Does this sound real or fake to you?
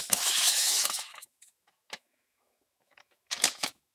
fake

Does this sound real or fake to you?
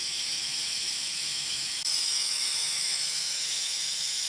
fake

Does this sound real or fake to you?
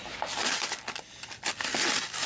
real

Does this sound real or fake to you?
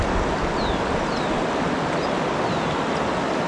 real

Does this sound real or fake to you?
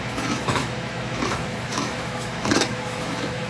fake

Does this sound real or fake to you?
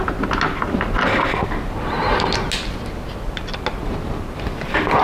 real